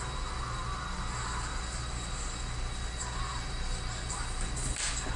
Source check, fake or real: real